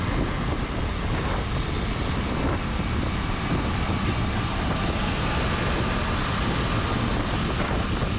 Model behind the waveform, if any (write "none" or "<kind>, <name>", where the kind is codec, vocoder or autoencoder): none